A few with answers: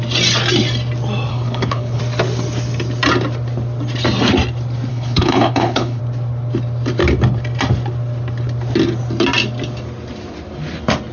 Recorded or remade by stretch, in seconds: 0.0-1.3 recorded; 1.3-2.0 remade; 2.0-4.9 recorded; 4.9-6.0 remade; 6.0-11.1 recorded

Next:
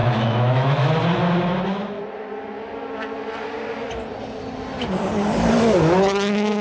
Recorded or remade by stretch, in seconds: 0.0-0.9 remade; 0.9-6.6 recorded

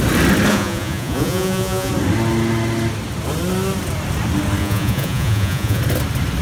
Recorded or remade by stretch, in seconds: 0.0-0.5 recorded; 0.5-1.9 remade; 1.9-4.6 recorded; 4.6-5.8 remade; 5.8-6.4 recorded

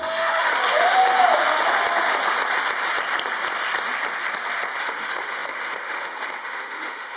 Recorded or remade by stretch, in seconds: 0.0-0.5 remade; 0.5-4.8 recorded; 4.8-7.2 remade

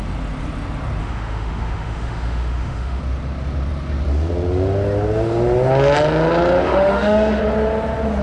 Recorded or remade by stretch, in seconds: 0.0-1.0 recorded; 1.0-3.0 remade; 3.0-6.6 recorded; 6.6-7.4 remade; 7.4-8.2 recorded